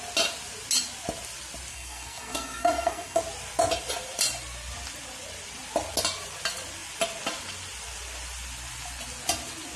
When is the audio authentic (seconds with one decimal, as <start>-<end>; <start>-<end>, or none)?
0.0-1.7; 3.2-9.8